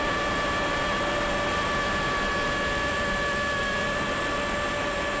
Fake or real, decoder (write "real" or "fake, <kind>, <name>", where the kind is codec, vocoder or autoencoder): real